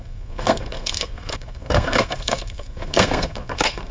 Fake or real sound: fake